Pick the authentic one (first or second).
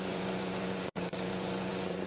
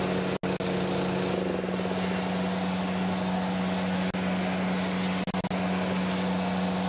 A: second